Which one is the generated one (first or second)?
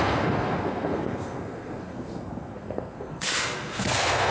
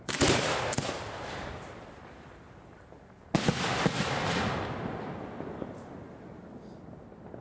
first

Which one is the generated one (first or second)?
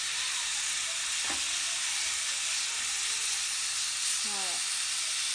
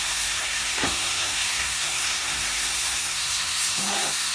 second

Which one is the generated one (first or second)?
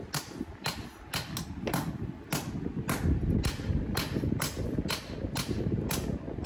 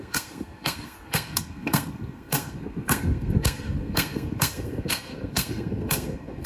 second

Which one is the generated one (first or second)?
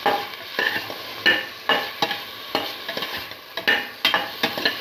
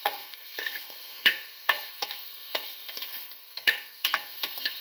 second